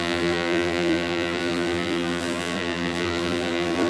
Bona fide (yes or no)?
no